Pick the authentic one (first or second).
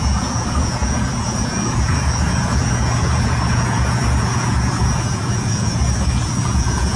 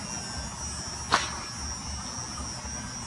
second